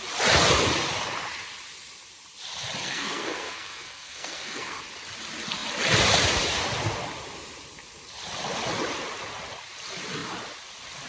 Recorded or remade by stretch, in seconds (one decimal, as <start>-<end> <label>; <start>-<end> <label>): 0.0-2.8 recorded; 2.8-4.8 remade; 4.8-11.1 recorded